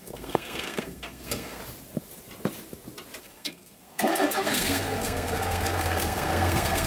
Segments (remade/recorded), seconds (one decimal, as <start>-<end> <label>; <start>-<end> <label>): 0.0-1.6 remade; 1.6-3.2 recorded; 3.2-6.9 remade